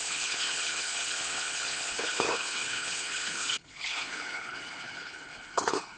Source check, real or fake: fake